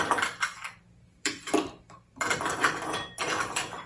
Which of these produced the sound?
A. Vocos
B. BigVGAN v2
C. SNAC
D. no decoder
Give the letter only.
B